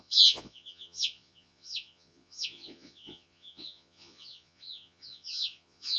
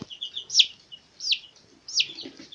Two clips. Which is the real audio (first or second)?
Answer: second